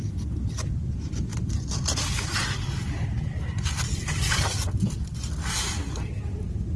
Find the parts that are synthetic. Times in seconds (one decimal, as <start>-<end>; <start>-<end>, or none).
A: none